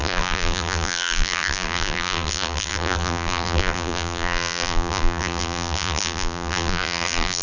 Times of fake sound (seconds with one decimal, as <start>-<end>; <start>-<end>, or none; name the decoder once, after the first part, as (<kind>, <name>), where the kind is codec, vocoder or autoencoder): 0.0-7.4 (vocoder, BigVGAN v2)